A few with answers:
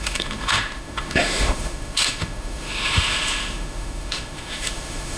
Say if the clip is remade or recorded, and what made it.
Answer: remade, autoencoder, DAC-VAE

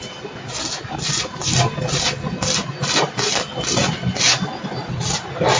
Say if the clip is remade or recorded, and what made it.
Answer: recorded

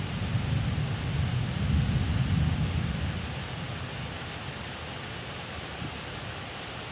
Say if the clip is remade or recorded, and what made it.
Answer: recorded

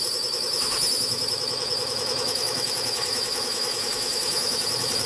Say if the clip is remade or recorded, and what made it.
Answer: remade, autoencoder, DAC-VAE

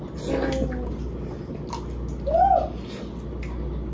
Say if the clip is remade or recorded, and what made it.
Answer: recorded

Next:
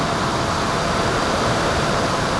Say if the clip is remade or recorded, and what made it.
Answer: recorded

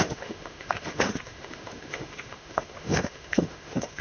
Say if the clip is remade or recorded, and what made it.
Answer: remade, autoencoder, DAC-VAE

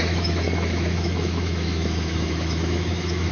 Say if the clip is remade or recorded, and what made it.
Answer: remade, autoencoder, DAC-VAE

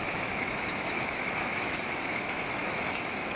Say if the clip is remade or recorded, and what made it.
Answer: remade, autoencoder, DAC-VAE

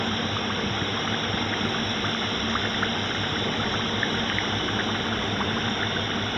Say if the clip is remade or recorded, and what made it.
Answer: recorded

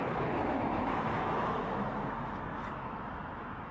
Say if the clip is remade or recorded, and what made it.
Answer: remade, autoencoder, DAC-VAE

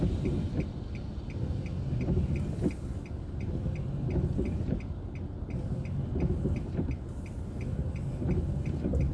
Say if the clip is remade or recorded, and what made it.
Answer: recorded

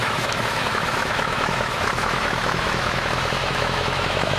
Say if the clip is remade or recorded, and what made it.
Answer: remade, autoencoder, DAC-VAE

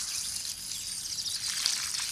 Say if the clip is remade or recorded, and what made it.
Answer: recorded